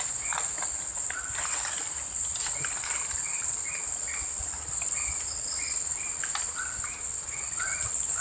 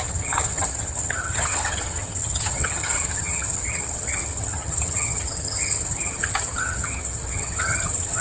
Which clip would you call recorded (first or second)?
first